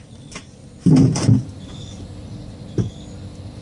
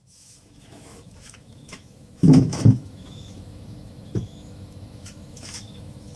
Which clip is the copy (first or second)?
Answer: second